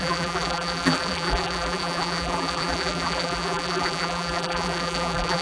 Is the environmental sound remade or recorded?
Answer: remade